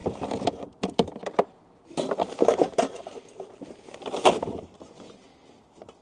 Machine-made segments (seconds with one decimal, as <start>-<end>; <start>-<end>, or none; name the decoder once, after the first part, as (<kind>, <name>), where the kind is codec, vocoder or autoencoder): none